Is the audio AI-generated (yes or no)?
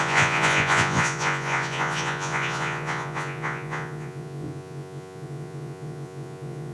yes